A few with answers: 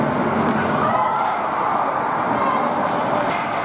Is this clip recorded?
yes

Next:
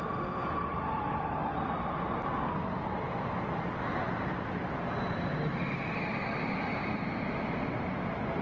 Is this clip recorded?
yes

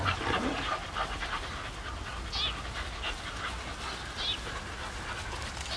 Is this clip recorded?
yes